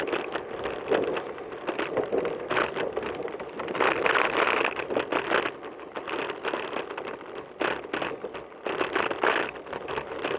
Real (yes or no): yes